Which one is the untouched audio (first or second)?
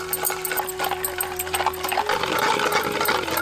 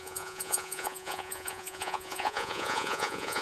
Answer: first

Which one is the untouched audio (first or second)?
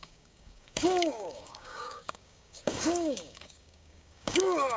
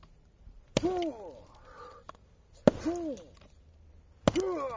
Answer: second